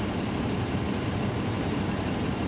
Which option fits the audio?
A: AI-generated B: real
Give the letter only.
A